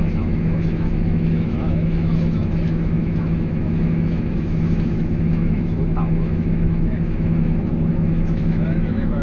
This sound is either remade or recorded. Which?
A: remade